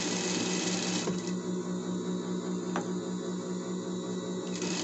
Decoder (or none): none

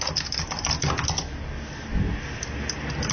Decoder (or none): none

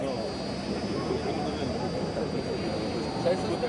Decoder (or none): none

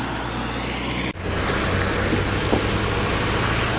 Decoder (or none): none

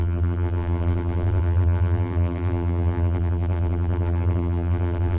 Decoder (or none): vocoder, BigVGAN v2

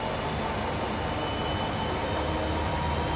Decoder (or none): none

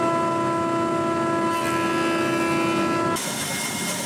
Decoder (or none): none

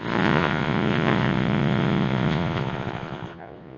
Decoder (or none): vocoder, Vocos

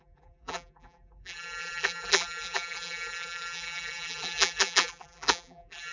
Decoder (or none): vocoder, BigVGAN v2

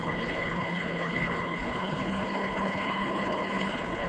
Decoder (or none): codec, HILCodec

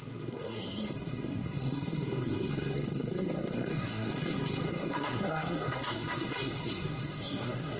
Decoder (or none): codec, SNAC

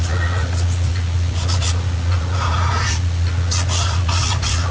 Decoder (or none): vocoder, Vocos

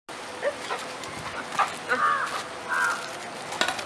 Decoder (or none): none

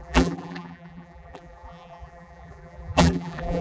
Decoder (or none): vocoder, BigVGAN v2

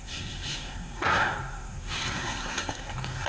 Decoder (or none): codec, SNAC